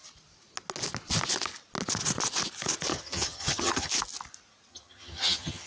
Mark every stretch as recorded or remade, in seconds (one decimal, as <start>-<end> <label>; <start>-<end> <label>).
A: 0.0-2.9 recorded; 2.9-3.9 remade; 3.9-4.7 recorded; 4.7-5.7 remade